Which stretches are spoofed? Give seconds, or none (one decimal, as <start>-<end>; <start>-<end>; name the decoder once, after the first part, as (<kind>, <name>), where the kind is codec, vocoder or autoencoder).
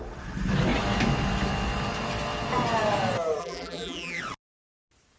3.4-4.2 (vocoder, BigVGAN v2)